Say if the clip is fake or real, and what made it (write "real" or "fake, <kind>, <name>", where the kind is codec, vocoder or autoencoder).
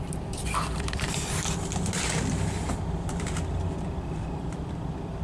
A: fake, vocoder, BigVGAN v2